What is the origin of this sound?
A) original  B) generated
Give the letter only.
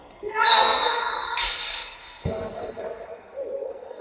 B